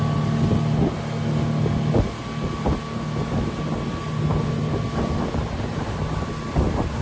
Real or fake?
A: real